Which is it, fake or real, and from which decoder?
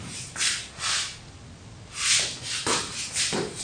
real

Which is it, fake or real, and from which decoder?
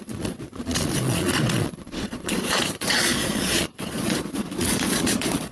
fake, vocoder, Vocos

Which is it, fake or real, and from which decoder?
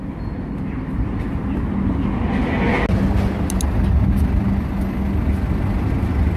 real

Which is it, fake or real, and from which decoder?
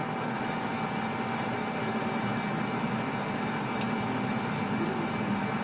real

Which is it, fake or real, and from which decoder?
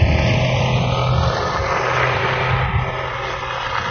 real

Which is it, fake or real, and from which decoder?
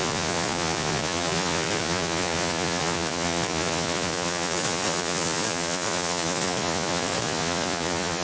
fake, vocoder, Vocos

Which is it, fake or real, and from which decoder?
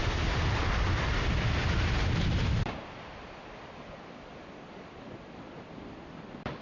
fake, vocoder, BigVGAN v2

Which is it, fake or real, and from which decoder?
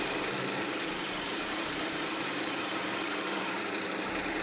fake, vocoder, BigVGAN v2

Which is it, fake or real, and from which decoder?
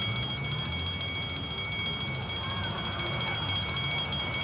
real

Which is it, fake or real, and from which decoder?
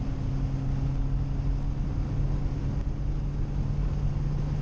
real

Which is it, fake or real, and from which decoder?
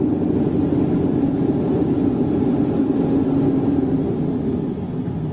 real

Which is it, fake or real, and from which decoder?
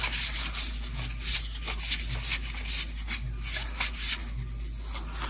real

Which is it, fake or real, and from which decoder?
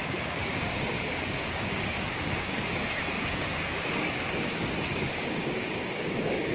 fake, codec, DAC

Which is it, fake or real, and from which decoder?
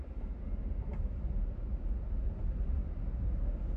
real